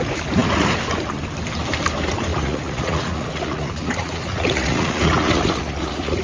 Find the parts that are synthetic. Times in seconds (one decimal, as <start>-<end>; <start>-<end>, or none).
2.3-6.2